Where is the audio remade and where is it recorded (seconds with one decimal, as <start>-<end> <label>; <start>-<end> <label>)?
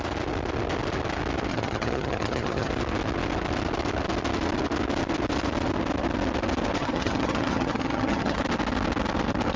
0.0-1.5 recorded; 1.5-2.7 remade; 2.7-6.8 recorded; 6.8-8.4 remade; 8.4-9.6 recorded